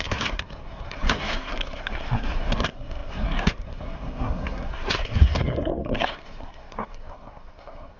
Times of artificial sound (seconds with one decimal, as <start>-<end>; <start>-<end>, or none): 0.0-8.0